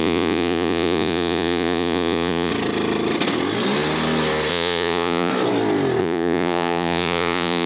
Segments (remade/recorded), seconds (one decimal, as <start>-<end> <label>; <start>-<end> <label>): 0.0-2.5 remade; 2.5-4.5 recorded; 4.5-5.3 remade; 5.3-6.0 recorded; 6.0-7.7 remade

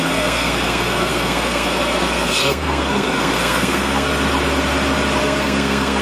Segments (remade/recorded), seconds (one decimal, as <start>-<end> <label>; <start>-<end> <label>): 0.0-4.1 remade; 4.1-5.2 recorded; 5.2-6.0 remade

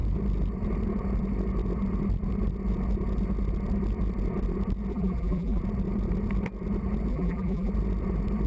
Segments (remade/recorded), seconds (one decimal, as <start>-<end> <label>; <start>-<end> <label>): 0.0-4.9 recorded; 4.9-5.6 remade; 5.6-7.1 recorded; 7.1-7.7 remade; 7.7-8.5 recorded